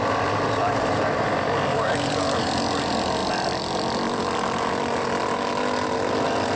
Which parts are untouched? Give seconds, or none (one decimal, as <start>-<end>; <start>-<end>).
0.0-3.2; 4.2-6.6